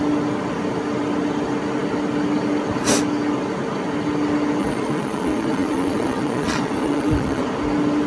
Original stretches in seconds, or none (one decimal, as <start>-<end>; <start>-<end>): 0.0-4.6; 7.4-8.1